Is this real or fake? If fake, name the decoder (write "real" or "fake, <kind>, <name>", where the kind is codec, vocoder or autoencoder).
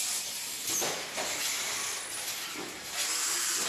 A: real